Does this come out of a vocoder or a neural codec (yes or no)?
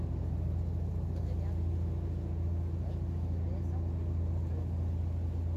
no